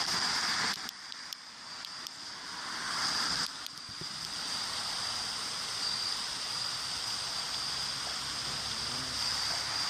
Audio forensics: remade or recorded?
recorded